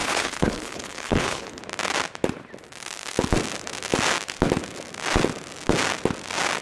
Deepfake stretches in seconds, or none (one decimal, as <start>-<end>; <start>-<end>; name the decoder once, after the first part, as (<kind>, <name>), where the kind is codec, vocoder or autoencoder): 0.0-1.6 (codec, HILCodec)